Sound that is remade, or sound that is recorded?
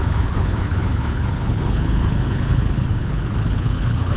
remade